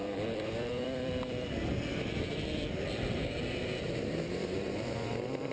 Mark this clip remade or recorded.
remade